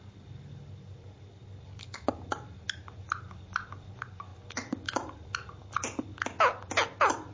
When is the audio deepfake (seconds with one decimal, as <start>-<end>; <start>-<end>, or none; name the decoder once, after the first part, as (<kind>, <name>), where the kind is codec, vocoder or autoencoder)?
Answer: none